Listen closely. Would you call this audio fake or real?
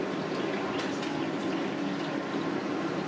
real